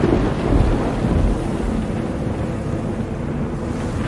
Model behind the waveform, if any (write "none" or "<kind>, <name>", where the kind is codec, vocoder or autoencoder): none